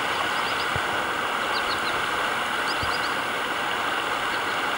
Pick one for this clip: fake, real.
real